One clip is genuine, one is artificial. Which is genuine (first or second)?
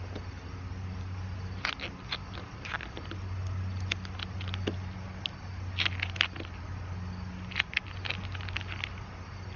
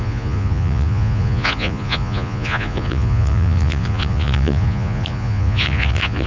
first